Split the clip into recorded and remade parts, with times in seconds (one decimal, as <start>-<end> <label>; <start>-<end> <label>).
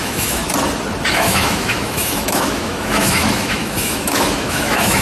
0.0-0.4 remade; 0.4-1.1 recorded; 1.1-5.0 remade